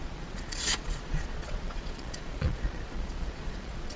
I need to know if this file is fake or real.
fake